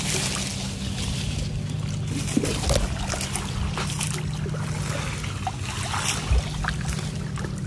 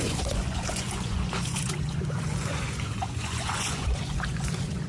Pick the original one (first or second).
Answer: first